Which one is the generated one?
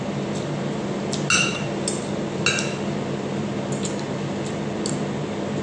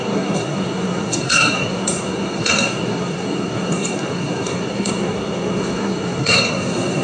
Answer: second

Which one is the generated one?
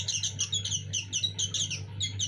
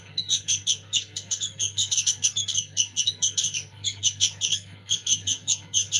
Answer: second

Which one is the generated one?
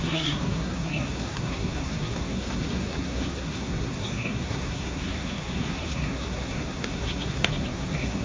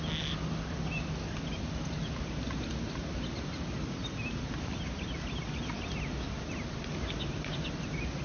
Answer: first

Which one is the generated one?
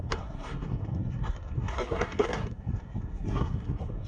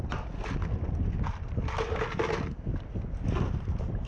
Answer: first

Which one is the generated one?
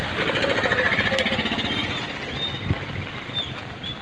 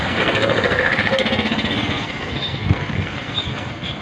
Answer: second